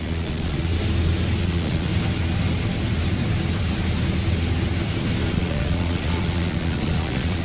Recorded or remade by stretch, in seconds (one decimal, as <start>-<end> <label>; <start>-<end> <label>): 0.0-0.7 remade; 0.7-1.4 recorded; 1.4-1.9 remade; 1.9-5.3 recorded; 5.3-7.4 remade